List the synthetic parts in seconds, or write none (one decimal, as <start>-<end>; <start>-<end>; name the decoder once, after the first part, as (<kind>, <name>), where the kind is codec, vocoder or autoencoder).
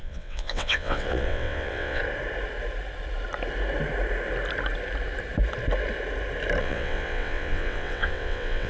0.0-2.0 (vocoder, WaveNeXt); 6.6-8.7